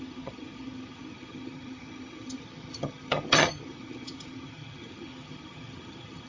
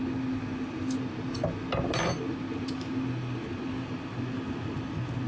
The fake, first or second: first